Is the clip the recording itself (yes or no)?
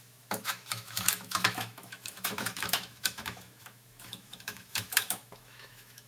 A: no